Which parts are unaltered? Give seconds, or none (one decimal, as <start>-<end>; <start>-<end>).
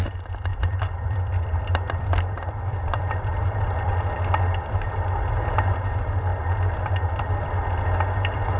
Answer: 0.0-0.5; 4.0-6.3; 7.5-8.6